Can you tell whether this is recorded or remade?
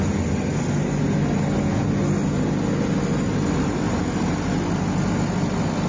recorded